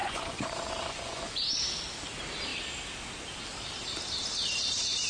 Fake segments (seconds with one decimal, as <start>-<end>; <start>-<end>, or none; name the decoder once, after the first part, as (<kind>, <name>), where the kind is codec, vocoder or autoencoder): 0.0-1.5 (vocoder, Vocos)